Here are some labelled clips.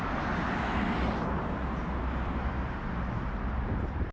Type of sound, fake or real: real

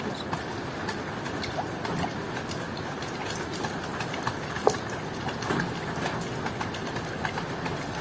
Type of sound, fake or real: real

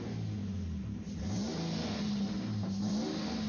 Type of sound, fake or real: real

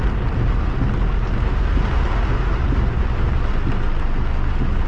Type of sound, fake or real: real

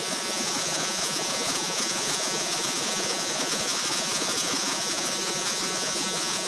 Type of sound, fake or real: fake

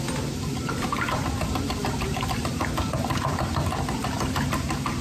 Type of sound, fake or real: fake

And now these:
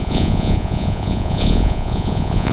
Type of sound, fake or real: fake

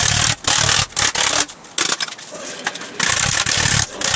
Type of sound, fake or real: real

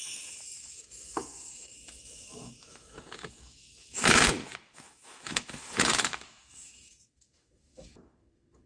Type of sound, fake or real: fake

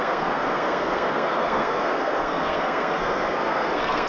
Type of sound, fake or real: fake